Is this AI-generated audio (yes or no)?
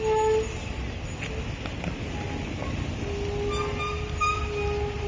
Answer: no